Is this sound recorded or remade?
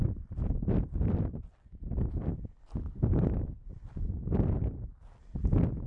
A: recorded